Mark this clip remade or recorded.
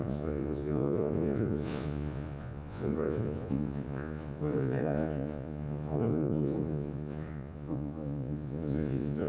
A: remade